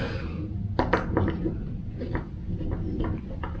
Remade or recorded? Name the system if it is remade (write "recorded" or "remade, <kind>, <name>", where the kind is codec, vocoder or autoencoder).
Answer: recorded